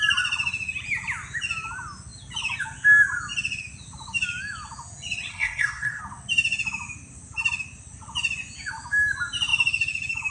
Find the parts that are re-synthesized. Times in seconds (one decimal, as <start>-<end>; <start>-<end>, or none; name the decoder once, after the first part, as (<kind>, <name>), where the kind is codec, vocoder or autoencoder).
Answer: 5.3-6.0 (codec, SNAC)